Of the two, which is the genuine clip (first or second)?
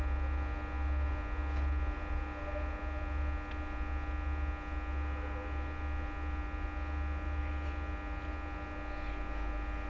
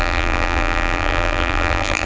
first